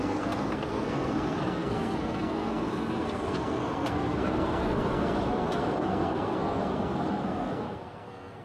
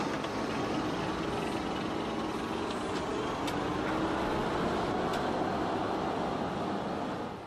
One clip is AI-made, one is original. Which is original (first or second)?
second